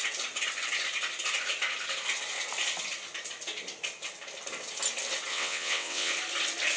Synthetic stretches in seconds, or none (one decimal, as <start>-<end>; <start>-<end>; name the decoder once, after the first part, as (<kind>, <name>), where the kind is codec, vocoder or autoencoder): 5.3-6.1 (vocoder, WaveNeXt)